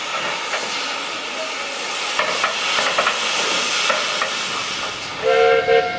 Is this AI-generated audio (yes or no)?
no